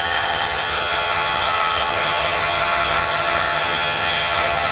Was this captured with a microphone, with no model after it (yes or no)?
no